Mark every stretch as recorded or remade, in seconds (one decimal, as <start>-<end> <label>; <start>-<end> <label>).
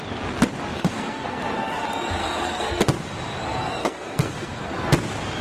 0.0-0.7 recorded; 0.7-1.4 remade; 1.4-2.2 recorded; 2.2-2.8 remade; 2.8-3.8 recorded; 3.8-4.7 remade; 4.7-5.4 recorded